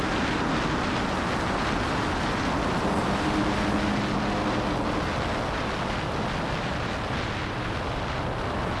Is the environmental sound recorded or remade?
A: recorded